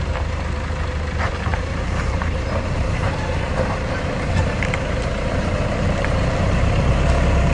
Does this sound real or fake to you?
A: fake